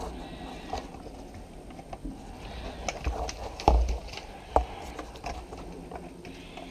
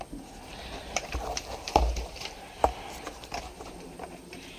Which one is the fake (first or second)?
second